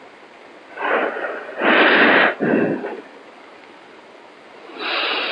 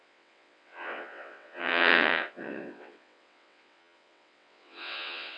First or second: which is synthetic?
second